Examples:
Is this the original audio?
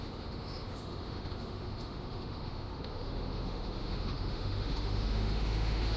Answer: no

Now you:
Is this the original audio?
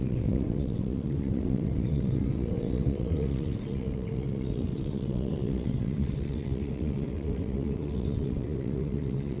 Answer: no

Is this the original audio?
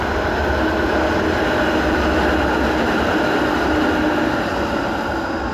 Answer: yes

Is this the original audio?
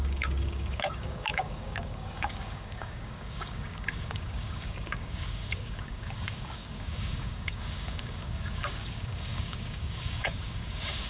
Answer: no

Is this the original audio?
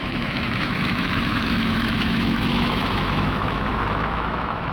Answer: no